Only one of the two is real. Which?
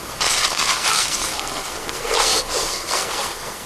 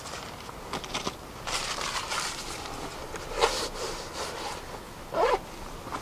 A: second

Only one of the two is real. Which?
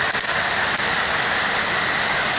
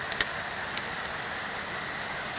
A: first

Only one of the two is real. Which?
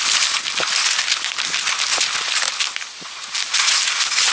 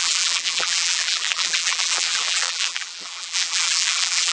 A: first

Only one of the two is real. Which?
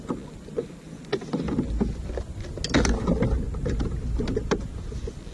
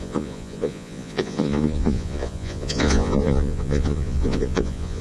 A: first